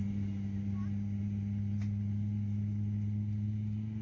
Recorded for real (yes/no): yes